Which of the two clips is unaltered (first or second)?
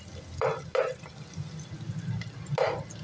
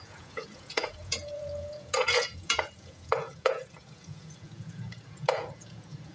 first